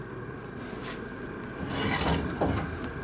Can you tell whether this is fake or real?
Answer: real